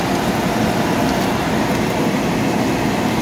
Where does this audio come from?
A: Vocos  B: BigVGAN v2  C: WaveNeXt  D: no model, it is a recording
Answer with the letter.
D